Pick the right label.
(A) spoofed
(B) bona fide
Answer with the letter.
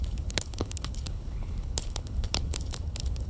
A